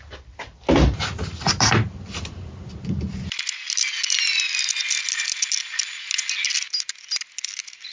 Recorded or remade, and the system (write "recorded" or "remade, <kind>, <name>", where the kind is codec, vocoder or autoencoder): recorded